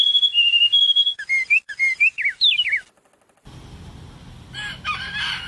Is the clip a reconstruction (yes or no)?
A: no